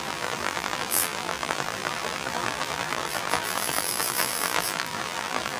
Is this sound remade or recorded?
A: remade